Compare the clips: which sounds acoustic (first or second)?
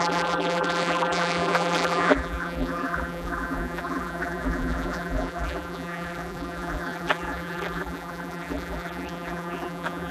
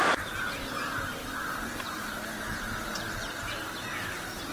second